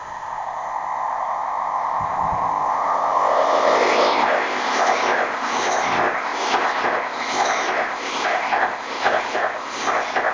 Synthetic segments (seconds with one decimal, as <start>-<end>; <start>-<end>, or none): 0.0-10.3